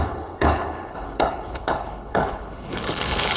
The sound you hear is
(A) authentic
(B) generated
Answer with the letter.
B